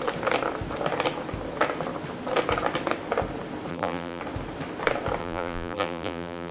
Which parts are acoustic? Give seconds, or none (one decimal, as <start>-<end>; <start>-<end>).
0.0-3.7; 4.2-5.2